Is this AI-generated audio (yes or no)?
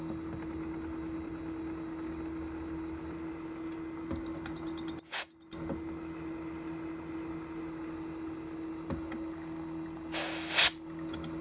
no